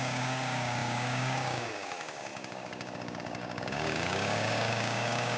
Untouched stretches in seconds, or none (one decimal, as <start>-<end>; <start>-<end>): none